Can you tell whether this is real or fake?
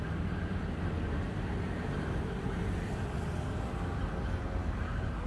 real